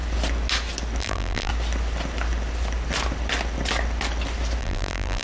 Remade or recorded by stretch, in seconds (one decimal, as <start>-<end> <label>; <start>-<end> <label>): 0.0-1.0 recorded; 1.0-1.5 remade; 1.5-4.6 recorded; 4.6-5.2 remade